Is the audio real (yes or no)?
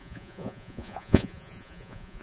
no